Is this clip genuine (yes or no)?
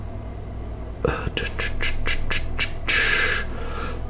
yes